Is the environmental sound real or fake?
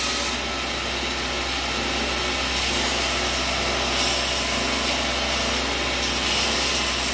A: real